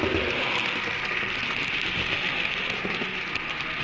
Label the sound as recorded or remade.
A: recorded